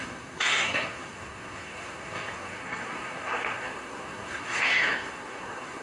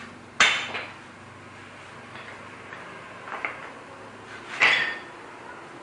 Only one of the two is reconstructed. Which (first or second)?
first